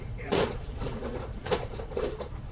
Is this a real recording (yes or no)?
no